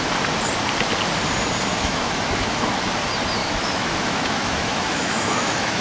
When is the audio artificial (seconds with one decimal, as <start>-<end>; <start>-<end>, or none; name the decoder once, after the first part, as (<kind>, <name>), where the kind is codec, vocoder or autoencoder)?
1.7-2.8 (autoencoder, DAC-VAE); 3.4-5.8